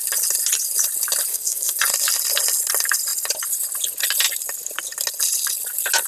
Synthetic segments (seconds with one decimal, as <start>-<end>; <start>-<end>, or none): 1.3-1.8